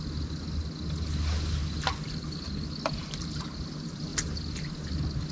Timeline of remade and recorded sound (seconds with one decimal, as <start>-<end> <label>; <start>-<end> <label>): 0.0-5.3 recorded